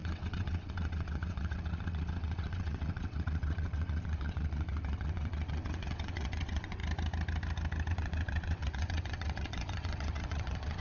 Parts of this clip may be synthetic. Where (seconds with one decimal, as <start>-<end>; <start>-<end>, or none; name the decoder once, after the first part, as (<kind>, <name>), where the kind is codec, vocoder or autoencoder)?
0.0-6.8 (vocoder, WaveNeXt); 7.9-10.8